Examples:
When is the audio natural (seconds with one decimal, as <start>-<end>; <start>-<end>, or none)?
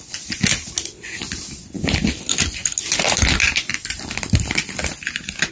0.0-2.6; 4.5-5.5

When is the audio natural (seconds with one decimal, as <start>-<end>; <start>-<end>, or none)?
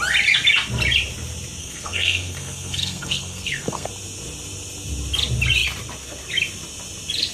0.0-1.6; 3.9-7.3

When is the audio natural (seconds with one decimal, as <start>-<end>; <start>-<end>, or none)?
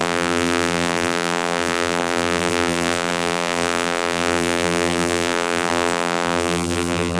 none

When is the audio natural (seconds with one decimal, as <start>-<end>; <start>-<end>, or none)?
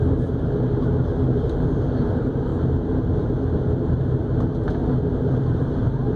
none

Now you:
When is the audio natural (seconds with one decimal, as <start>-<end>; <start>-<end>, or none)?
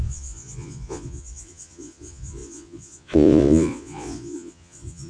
none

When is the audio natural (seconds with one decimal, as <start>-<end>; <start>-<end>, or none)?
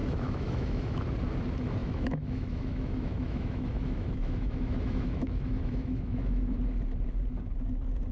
1.0-1.8; 6.6-8.1